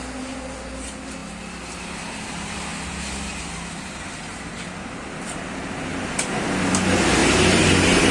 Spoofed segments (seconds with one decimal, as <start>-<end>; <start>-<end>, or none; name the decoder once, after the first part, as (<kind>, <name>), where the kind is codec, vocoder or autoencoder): none